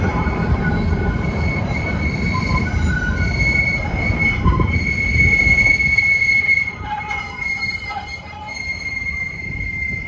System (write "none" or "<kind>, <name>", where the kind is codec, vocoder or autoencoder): vocoder, BigVGAN v2